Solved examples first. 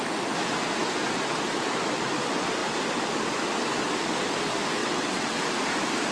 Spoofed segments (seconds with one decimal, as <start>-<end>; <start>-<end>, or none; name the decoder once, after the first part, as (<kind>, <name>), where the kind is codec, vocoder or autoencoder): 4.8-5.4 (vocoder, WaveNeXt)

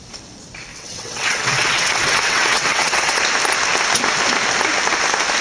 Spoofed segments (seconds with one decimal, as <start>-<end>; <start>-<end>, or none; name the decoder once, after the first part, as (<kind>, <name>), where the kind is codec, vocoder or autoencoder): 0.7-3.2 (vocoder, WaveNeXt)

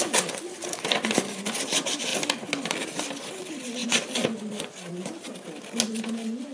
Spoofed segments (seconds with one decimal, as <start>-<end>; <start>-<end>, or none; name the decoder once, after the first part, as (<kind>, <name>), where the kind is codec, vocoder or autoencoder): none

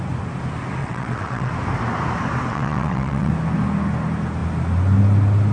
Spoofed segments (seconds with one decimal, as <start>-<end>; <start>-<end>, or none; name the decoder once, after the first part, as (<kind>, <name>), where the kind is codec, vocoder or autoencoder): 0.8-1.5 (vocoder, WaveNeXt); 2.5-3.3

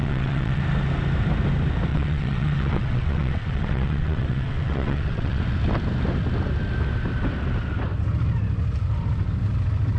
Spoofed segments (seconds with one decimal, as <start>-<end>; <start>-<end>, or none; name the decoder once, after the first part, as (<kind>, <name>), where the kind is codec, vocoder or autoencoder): 0.0-0.6 (vocoder, WaveNeXt); 1.9-5.4